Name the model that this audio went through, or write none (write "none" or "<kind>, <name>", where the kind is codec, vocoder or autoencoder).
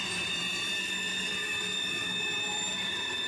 none